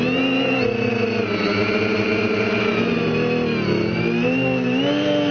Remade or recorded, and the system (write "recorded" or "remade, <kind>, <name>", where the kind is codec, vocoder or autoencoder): recorded